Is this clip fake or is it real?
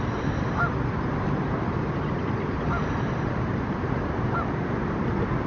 real